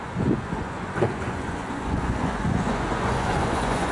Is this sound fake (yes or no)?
yes